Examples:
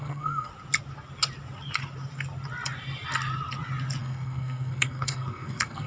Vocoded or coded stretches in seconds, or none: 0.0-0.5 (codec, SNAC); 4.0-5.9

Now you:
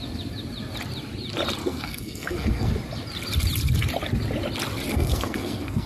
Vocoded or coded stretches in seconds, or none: 1.6-2.7 (codec, SNAC); 4.9-5.9

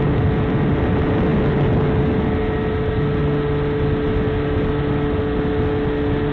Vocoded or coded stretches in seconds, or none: none